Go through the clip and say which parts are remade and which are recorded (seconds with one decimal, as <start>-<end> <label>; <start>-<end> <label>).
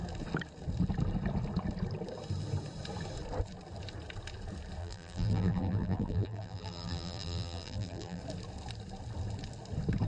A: 0.0-4.8 recorded; 4.8-8.2 remade; 8.2-10.1 recorded